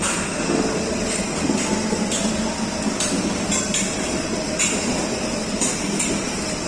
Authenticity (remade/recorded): recorded